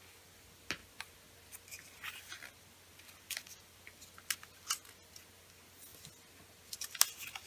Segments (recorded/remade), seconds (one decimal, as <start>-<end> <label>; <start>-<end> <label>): 0.0-7.5 recorded